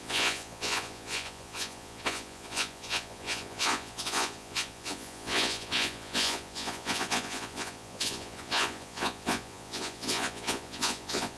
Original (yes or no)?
no